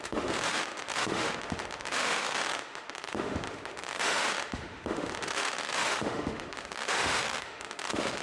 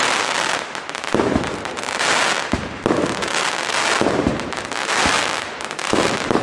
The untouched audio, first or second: second